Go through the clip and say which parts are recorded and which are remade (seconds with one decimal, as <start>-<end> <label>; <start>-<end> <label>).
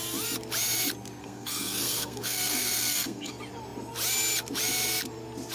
0.0-1.2 recorded; 1.2-3.3 remade; 3.3-5.5 recorded